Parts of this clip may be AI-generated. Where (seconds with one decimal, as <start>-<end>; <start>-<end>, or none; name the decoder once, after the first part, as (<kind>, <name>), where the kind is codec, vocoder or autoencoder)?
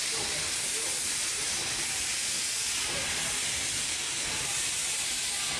none